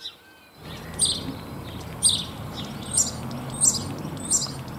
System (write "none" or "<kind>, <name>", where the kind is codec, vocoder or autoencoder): none